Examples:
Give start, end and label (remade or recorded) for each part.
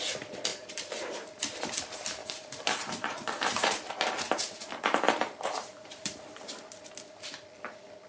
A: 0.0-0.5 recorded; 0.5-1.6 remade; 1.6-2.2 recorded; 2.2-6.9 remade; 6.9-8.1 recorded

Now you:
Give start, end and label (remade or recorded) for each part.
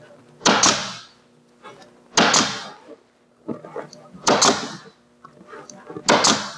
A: 0.0-6.6 recorded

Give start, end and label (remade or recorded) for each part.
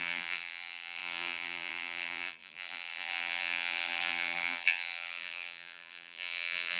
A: 0.0-6.8 remade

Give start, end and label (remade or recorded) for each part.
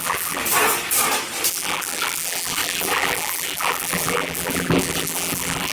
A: 0.0-0.4 remade; 0.4-1.5 recorded; 1.5-5.7 remade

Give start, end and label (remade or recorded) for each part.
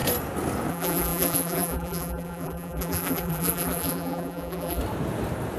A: 0.0-0.7 recorded; 0.7-4.8 remade; 4.8-5.6 recorded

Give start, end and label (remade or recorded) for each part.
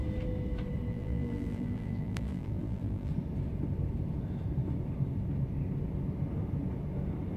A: 0.0-0.9 recorded; 0.9-3.1 remade; 3.1-7.4 recorded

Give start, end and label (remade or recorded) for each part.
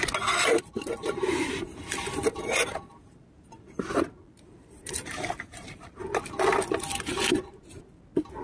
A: 0.0-1.0 recorded; 1.0-5.9 remade; 5.9-8.4 recorded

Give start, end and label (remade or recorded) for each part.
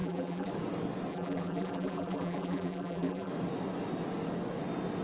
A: 0.0-0.5 remade; 0.5-1.1 recorded; 1.1-3.3 remade; 3.3-5.0 recorded